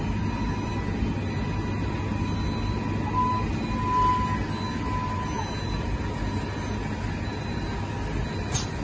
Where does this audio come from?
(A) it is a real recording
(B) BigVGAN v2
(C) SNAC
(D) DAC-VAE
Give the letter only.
A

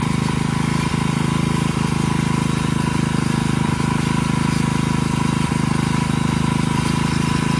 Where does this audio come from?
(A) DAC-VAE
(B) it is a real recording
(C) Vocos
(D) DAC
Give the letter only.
B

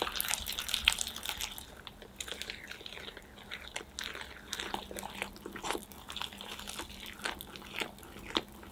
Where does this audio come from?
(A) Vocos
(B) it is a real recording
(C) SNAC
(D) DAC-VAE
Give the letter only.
B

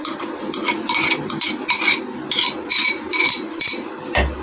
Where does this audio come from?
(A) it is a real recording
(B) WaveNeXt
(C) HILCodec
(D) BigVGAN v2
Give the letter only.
A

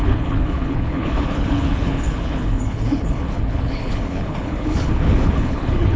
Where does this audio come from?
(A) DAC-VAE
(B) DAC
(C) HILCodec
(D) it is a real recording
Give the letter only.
C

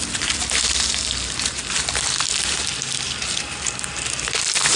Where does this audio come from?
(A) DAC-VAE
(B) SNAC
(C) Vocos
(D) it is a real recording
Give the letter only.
D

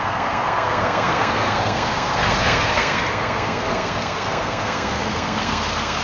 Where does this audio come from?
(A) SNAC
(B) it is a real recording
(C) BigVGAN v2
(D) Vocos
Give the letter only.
A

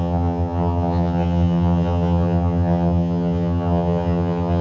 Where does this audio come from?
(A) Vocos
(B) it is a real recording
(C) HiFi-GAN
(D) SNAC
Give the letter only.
C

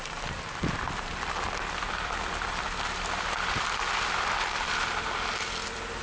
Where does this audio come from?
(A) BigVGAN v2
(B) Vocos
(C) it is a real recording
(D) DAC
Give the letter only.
A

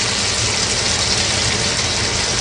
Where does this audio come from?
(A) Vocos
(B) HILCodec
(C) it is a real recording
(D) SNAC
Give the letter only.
C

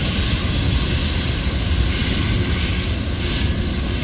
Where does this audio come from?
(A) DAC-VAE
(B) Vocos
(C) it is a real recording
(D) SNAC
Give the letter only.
C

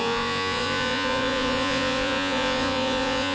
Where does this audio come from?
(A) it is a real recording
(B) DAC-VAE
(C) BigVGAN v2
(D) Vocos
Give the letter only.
D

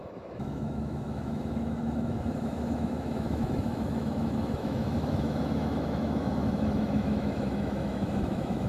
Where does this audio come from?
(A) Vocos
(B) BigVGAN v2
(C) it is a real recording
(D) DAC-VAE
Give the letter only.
D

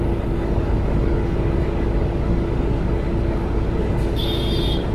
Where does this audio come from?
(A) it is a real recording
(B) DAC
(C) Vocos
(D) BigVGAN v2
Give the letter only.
B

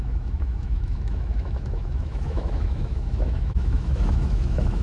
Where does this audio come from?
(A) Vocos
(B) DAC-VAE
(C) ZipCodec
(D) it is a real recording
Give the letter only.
B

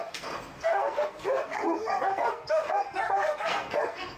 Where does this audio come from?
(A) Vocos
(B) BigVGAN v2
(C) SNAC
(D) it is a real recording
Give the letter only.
C